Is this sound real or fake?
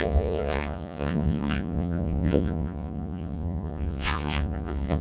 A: fake